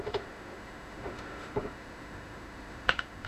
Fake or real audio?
fake